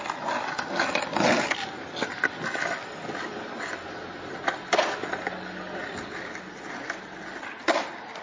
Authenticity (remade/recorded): recorded